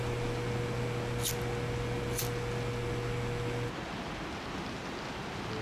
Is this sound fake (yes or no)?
no